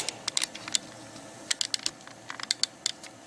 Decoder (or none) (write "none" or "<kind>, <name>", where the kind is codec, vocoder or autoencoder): none